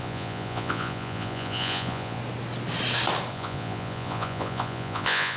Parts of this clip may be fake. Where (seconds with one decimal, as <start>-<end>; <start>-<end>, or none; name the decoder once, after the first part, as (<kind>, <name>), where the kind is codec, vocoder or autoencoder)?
0.0-2.2 (vocoder, Vocos); 3.3-5.4